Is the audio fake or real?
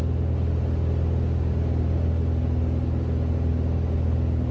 real